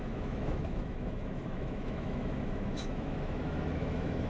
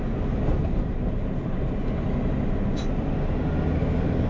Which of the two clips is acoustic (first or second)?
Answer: second